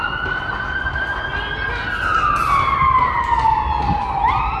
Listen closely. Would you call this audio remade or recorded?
recorded